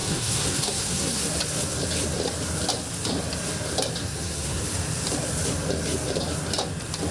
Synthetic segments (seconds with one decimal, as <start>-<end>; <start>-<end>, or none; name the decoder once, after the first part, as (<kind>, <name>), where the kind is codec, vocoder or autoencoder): 0.0-1.2 (codec, SNAC); 4.0-4.6